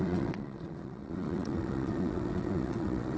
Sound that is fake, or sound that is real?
fake